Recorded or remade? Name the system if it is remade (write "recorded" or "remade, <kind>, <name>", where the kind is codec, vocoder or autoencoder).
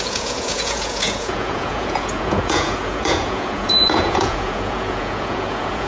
remade, vocoder, Vocos